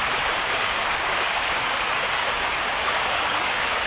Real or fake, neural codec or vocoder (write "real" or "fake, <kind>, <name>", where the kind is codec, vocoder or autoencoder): fake, codec, DAC